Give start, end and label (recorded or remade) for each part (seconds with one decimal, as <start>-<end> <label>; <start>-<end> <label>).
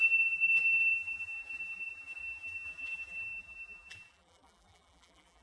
0.0-5.4 remade